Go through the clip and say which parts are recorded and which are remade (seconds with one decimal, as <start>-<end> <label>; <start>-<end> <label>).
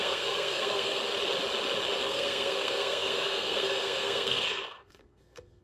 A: 0.0-1.0 remade; 1.0-2.0 recorded; 2.0-5.6 remade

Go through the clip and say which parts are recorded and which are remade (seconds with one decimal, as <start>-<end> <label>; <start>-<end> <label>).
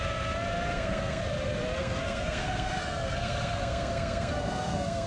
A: 0.0-0.5 recorded; 0.5-1.2 remade; 1.2-1.8 recorded; 1.8-5.1 remade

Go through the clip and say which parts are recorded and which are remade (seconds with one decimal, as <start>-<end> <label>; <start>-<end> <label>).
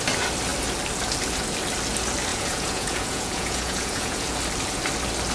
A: 0.0-2.3 recorded; 2.3-4.3 remade; 4.3-5.3 recorded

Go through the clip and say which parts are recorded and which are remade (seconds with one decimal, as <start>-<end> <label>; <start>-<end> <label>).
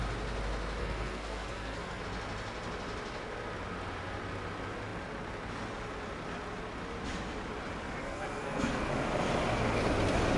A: 0.0-0.8 recorded; 0.8-2.0 remade; 2.0-8.0 recorded; 8.0-8.9 remade; 8.9-10.4 recorded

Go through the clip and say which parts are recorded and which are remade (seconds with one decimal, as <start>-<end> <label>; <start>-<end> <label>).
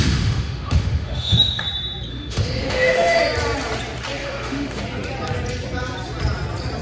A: 0.0-1.6 remade; 1.6-2.1 recorded; 2.1-3.2 remade; 3.2-4.2 recorded; 4.2-4.8 remade; 4.8-6.8 recorded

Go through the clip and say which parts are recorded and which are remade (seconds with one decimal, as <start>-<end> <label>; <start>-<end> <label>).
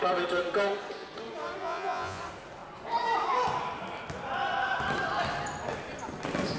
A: 0.0-1.6 recorded; 1.6-2.2 remade; 2.2-6.6 recorded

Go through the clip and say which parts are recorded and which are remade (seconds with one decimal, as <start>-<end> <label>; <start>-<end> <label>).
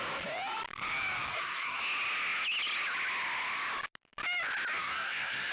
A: 0.0-1.3 recorded; 1.3-1.8 remade; 1.8-4.8 recorded; 4.8-5.5 remade